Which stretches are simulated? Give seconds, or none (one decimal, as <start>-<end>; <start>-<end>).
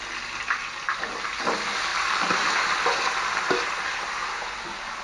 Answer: none